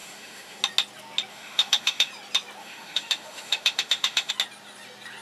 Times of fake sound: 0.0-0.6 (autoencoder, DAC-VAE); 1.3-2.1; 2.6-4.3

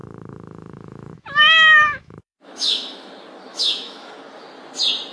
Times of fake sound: 0.0-3.1 (autoencoder, DAC-VAE); 3.5-4.1

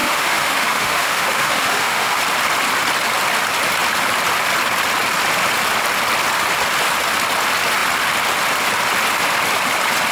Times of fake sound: 0.0-2.2 (autoencoder, DAC-VAE)